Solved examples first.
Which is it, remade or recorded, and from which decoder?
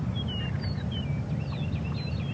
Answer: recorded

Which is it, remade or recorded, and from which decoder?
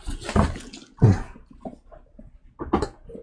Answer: recorded